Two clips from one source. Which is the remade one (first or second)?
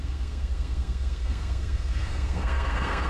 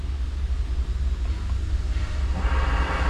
first